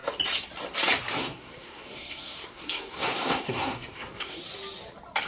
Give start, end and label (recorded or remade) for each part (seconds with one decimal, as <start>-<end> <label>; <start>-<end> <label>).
0.0-1.2 recorded; 1.2-4.4 remade; 4.4-5.3 recorded